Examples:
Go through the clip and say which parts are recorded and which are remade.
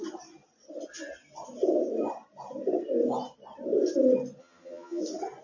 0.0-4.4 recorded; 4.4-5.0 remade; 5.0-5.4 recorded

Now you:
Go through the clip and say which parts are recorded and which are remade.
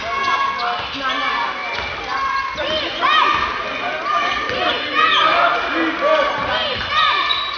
0.0-5.5 recorded; 5.5-6.8 remade; 6.8-7.6 recorded